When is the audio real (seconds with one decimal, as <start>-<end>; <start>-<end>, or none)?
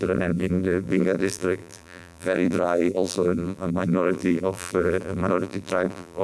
none